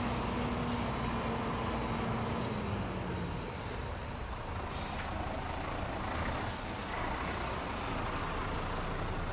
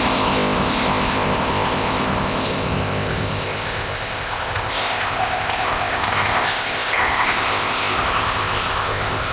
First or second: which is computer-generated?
second